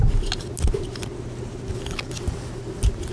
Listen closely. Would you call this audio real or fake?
real